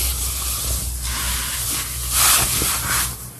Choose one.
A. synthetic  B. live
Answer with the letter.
B